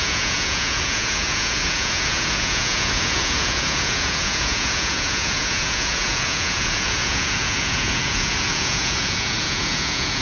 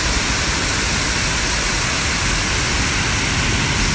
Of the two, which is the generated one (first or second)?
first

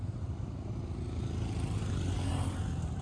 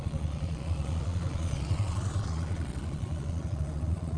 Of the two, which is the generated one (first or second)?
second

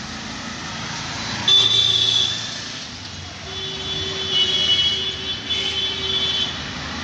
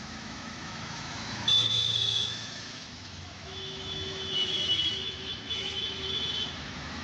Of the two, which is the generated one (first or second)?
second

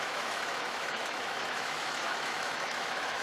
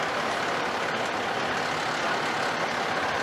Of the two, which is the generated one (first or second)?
first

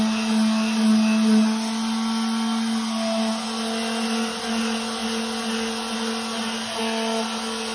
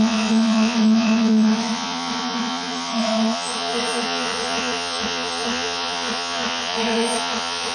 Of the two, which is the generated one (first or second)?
second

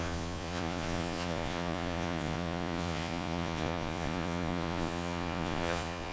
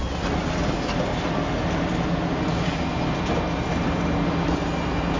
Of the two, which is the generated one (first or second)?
first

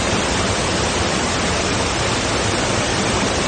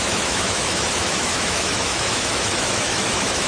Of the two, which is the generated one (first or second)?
second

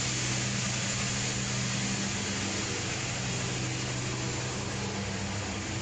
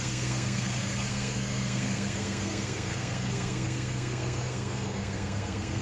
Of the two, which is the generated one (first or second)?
second